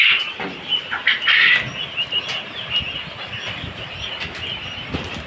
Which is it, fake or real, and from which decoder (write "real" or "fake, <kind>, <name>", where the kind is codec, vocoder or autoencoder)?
real